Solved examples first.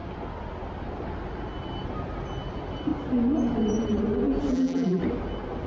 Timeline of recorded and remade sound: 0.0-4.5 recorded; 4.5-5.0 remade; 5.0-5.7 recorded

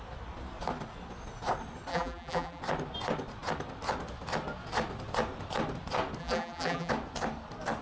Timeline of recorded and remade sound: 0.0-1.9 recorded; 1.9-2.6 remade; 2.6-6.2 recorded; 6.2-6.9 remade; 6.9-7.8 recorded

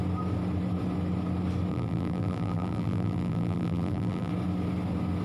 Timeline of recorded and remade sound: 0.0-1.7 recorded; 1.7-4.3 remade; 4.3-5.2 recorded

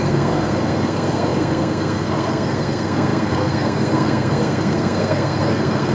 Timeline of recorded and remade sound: 0.0-5.9 remade